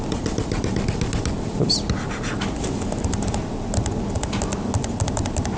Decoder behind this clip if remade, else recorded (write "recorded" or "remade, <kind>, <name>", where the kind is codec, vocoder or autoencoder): recorded